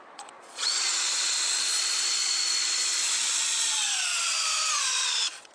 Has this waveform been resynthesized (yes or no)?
yes